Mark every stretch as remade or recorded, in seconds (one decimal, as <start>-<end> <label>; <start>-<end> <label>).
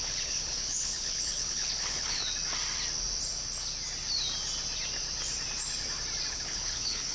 0.0-2.2 remade; 2.2-6.3 recorded; 6.3-7.1 remade